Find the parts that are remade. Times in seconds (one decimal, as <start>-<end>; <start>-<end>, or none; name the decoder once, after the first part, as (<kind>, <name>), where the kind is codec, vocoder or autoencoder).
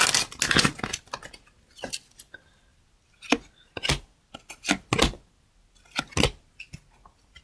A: none